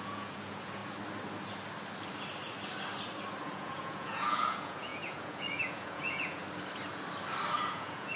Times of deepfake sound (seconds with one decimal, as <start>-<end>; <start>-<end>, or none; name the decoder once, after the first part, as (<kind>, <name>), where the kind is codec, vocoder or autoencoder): 0.0-0.8 (vocoder, Vocos); 3.4-6.4; 7.6-8.2